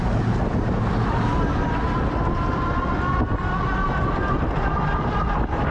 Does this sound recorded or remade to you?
recorded